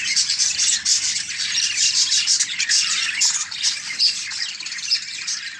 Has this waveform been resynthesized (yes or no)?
yes